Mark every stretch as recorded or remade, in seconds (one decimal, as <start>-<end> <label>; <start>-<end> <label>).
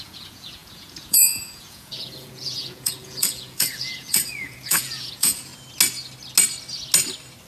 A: 0.0-5.5 remade; 5.5-7.5 recorded